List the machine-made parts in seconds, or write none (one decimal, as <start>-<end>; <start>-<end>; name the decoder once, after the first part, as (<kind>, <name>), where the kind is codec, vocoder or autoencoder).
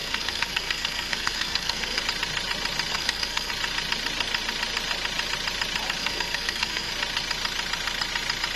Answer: 0.0-2.0 (codec, SNAC); 2.9-3.5; 6.0-6.9